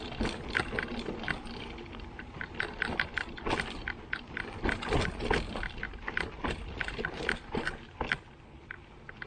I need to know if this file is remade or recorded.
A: recorded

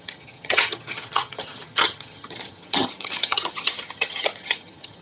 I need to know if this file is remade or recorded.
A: remade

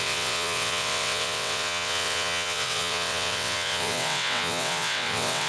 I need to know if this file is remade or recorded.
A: remade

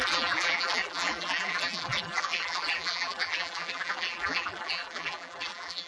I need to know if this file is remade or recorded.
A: remade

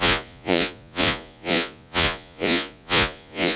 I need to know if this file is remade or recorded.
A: remade